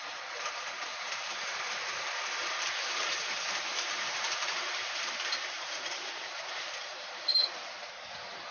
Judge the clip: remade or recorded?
remade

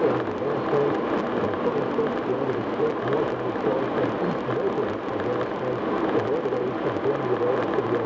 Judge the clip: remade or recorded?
recorded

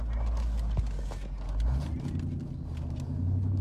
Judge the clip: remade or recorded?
recorded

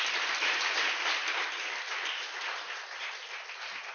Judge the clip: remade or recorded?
recorded